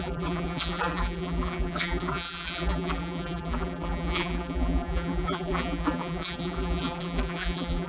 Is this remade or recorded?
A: remade